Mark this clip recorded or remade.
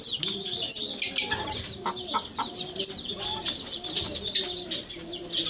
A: recorded